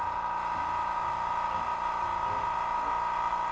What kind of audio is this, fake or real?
real